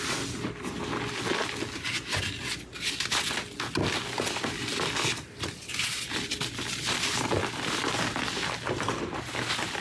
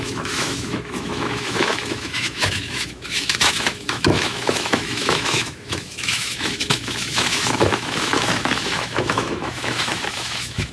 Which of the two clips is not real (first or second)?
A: second